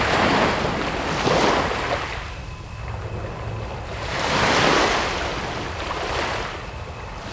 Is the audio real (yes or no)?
yes